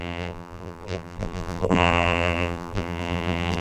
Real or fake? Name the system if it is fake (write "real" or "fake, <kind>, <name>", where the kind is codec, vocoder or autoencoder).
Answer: fake, vocoder, BigVGAN v2